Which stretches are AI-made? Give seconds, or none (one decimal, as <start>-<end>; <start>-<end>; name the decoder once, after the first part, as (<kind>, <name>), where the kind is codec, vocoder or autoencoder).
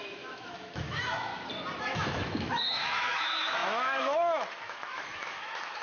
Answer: 0.0-1.3 (autoencoder, DAC-VAE); 1.8-5.8